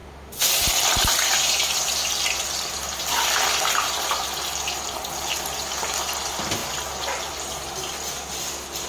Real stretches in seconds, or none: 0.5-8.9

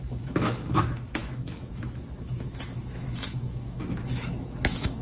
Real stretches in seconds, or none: none